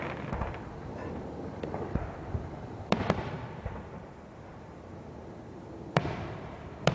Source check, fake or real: fake